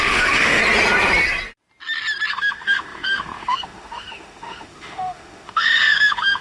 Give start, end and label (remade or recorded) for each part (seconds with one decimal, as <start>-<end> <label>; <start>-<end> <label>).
0.0-0.6 remade; 0.6-2.3 recorded; 2.3-6.4 remade